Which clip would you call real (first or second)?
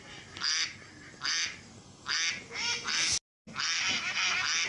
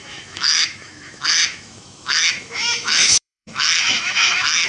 first